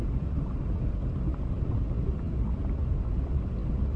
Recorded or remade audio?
recorded